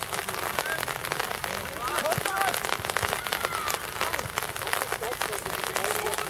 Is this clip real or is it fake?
real